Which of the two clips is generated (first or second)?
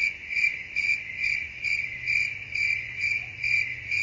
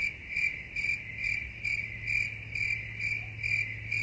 first